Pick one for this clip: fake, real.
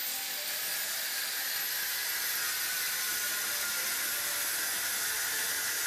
real